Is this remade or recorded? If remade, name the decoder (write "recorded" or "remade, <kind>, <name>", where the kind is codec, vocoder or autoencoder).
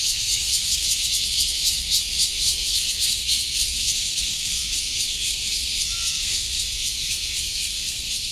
remade, codec, SNAC